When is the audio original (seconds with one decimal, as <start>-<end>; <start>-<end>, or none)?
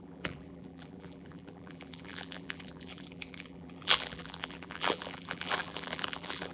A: none